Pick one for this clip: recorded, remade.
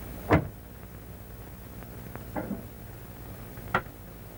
recorded